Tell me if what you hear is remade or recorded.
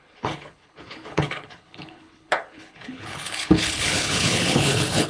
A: remade